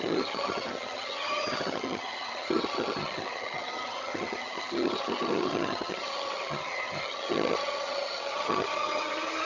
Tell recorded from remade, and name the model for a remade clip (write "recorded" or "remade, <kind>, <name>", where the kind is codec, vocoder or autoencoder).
remade, vocoder, HiFi-GAN